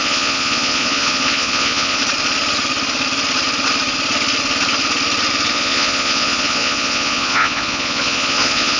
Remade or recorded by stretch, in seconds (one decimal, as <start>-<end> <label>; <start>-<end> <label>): 0.0-2.0 remade; 2.0-5.5 recorded; 5.5-8.8 remade